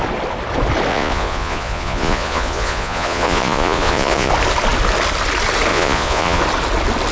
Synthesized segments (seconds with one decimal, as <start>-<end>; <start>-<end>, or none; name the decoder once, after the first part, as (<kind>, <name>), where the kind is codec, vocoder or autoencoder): 0.9-4.3 (vocoder, Vocos); 5.7-6.4